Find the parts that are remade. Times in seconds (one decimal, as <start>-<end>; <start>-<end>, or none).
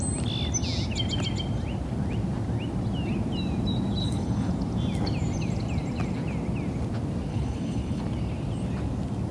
4.0-4.5; 7.3-8.0